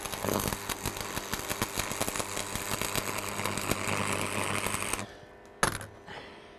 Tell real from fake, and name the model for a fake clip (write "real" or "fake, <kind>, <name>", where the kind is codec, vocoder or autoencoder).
real